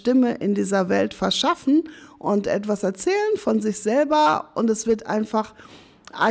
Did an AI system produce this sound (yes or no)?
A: no